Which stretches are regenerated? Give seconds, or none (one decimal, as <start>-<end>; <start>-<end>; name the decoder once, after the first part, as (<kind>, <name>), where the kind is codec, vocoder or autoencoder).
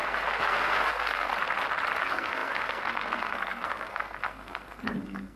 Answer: 0.0-1.3 (codec, SNAC); 2.0-5.4